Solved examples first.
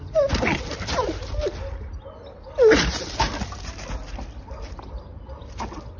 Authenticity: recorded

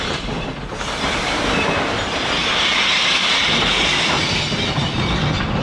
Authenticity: recorded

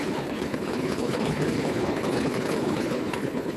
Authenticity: remade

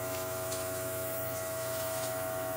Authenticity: remade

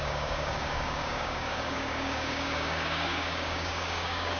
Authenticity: remade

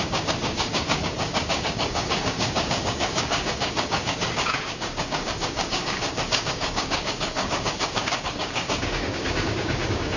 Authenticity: remade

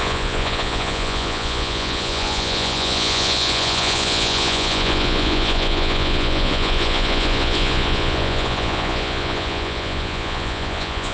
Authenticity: remade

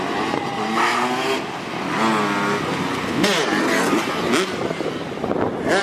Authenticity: recorded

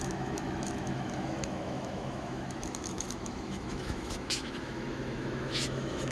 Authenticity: remade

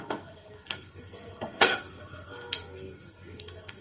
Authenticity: remade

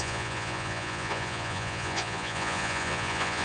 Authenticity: remade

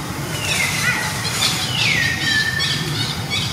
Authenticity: remade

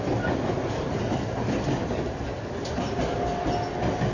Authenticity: recorded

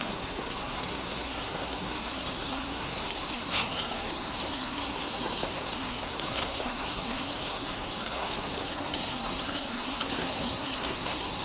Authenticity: remade